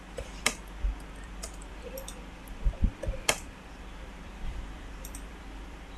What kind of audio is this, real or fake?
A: fake